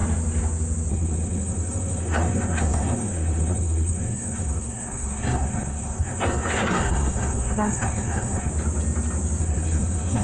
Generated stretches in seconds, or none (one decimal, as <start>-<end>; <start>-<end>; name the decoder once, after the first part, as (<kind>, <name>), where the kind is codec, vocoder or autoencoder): 0.9-8.5 (codec, SNAC); 9.4-10.2